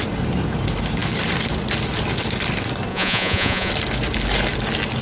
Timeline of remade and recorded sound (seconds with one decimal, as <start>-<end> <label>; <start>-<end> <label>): 0.0-2.9 recorded; 2.9-3.7 remade; 3.7-5.0 recorded